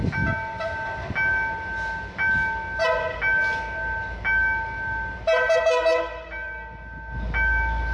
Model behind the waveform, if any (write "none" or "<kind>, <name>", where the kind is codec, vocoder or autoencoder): none